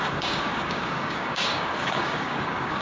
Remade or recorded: remade